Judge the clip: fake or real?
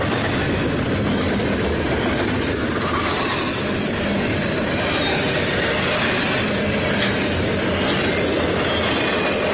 real